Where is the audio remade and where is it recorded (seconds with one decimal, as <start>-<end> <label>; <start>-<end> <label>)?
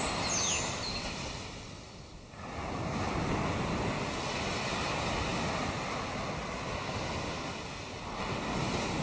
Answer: 0.0-9.0 recorded